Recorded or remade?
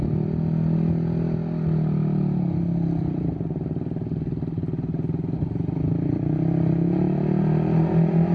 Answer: recorded